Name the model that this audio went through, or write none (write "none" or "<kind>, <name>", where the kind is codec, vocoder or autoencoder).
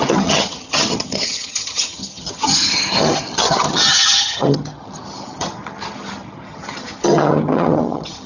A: vocoder, HiFi-GAN